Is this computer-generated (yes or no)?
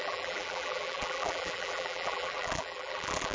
yes